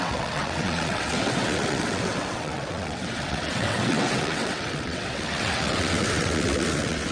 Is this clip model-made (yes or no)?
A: yes